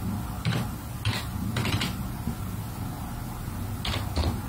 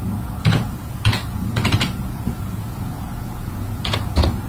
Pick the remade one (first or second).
second